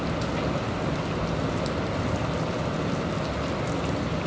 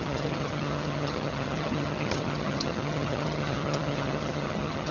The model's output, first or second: second